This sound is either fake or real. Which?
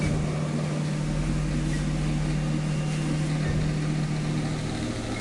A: real